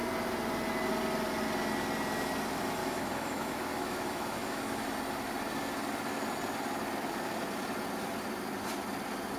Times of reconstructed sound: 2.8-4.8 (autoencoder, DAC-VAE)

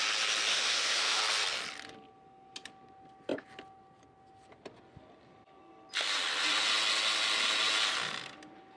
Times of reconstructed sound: 0.5-1.2 (autoencoder, DAC-VAE)

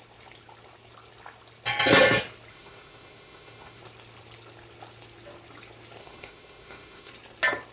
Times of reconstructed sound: 2.5-3.8 (autoencoder, DAC-VAE); 6.0-7.1

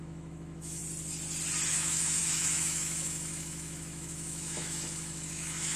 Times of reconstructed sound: 0.0-0.8 (autoencoder, DAC-VAE); 1.7-5.8

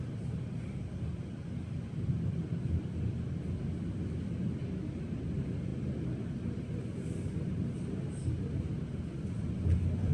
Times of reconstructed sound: none

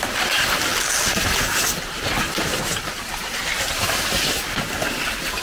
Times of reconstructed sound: none

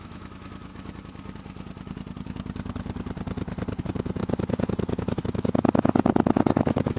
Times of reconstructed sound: 0.0-0.7 (autoencoder, DAC-VAE); 3.8-7.0

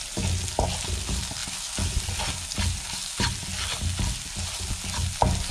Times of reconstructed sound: none